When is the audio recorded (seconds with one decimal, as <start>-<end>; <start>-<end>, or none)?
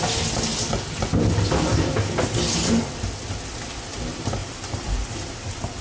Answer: 0.0-4.4; 5.3-5.8